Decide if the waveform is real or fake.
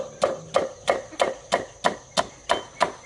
real